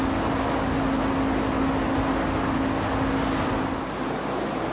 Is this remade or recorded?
recorded